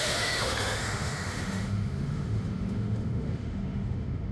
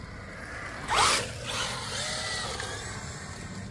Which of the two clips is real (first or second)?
second